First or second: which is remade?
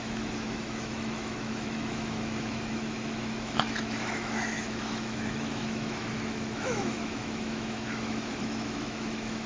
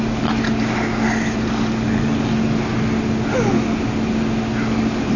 first